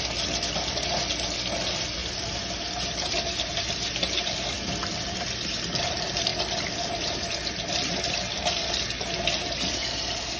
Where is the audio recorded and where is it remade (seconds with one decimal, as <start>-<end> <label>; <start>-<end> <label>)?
0.0-10.4 recorded